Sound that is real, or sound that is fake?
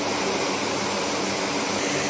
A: real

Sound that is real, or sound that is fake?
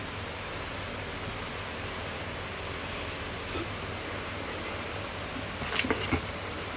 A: real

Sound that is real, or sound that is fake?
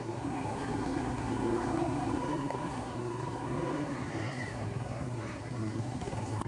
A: fake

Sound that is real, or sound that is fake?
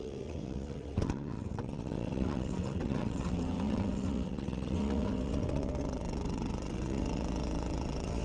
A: fake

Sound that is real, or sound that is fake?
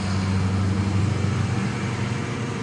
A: real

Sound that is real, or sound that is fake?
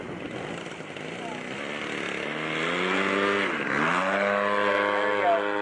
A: real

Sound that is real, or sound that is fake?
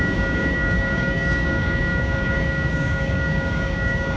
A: fake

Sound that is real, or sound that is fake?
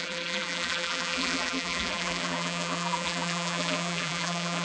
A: fake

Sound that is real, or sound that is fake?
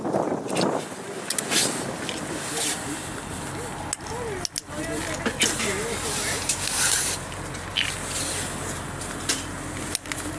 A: real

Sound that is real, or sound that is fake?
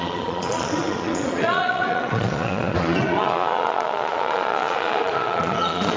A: fake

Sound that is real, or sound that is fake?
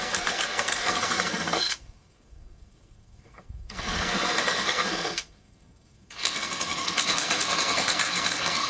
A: fake